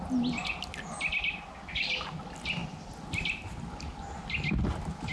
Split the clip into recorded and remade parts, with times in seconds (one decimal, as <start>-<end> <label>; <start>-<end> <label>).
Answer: 0.0-5.1 recorded